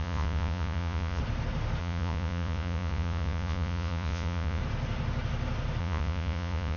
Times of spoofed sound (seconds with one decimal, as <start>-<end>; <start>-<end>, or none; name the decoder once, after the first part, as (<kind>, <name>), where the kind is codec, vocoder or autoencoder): 0.0-1.2 (vocoder, Vocos); 1.8-4.6; 5.8-6.8